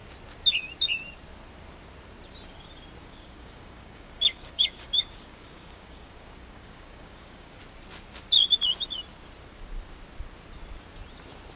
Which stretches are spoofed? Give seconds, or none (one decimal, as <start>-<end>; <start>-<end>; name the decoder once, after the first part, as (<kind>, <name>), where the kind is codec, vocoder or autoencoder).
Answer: 3.0-7.6 (codec, DAC)